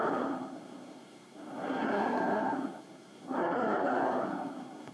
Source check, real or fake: fake